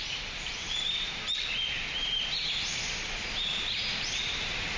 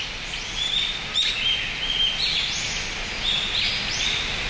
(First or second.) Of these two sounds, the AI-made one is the first